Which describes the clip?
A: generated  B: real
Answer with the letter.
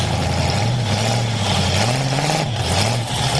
B